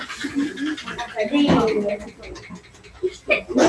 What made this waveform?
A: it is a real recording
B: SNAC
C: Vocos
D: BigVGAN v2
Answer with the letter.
A